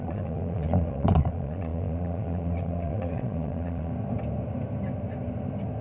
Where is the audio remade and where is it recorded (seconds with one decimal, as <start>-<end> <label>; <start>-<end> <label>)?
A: 0.0-3.9 remade; 3.9-5.8 recorded